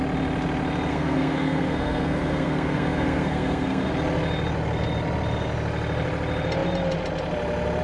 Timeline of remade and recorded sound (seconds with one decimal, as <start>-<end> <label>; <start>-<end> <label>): 0.0-0.9 recorded; 0.9-3.9 remade; 3.9-7.8 recorded